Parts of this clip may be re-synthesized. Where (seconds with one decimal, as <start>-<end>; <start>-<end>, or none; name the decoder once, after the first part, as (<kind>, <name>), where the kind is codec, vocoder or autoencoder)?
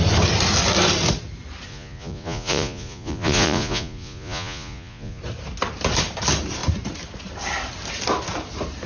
1.7-5.2 (vocoder, Vocos)